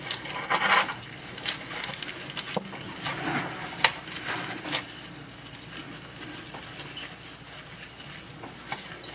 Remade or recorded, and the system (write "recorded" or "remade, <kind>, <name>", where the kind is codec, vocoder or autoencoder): recorded